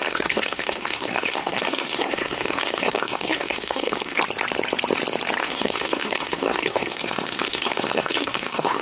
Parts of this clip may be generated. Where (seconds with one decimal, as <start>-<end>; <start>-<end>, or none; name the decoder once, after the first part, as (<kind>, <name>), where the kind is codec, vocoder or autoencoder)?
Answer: 0.0-4.2 (codec, SNAC); 5.4-8.8